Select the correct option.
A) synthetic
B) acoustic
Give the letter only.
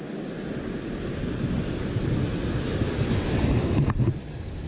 B